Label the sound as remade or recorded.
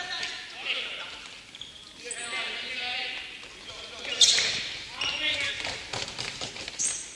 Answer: recorded